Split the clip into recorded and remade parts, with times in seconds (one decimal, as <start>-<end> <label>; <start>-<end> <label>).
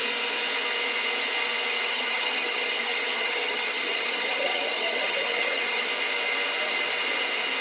0.0-1.9 recorded; 1.9-5.9 remade; 5.9-7.6 recorded